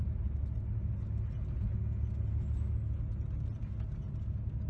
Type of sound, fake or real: real